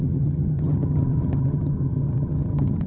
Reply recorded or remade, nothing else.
remade